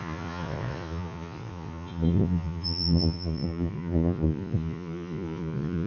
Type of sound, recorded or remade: remade